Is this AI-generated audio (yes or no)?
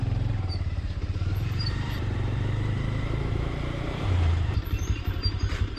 yes